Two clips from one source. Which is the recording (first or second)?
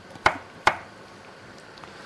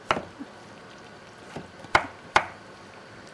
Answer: second